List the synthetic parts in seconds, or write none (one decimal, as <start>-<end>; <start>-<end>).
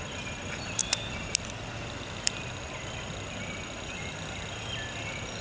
none